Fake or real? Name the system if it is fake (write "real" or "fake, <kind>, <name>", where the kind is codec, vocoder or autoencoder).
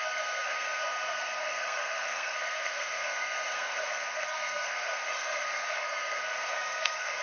fake, codec, SNAC